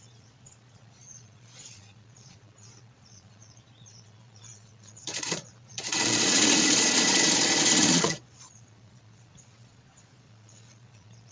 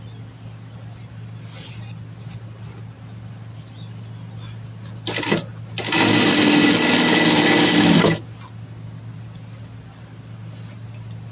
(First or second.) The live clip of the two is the second